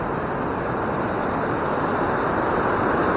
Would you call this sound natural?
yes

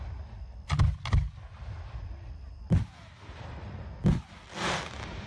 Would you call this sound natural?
yes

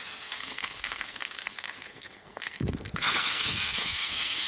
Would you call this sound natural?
no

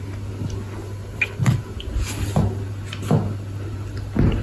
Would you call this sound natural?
yes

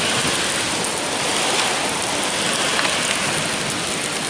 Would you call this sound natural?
yes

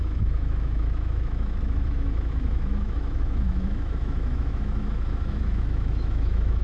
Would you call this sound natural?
no